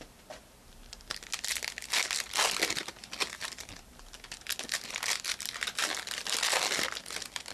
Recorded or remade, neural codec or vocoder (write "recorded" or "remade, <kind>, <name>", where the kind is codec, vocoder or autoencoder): recorded